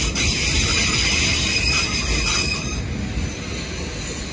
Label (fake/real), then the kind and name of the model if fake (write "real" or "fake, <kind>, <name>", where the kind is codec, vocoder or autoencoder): real